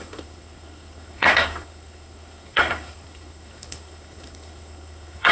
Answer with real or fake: fake